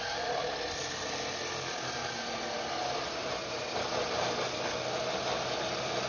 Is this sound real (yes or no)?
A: yes